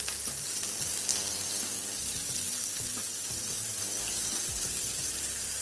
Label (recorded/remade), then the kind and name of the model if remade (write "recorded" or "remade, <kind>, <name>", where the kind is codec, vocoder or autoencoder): recorded